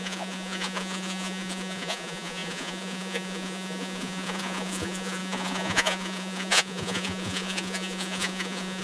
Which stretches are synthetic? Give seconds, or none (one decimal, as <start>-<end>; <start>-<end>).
0.0-8.8